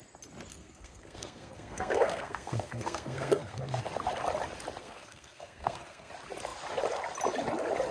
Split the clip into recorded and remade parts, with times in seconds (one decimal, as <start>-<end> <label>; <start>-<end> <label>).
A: 0.0-0.5 recorded; 0.5-3.8 remade; 3.8-4.8 recorded; 4.8-6.1 remade; 6.1-7.9 recorded